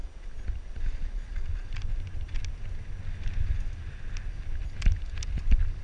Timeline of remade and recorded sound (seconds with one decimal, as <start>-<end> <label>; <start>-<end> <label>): 0.0-5.8 recorded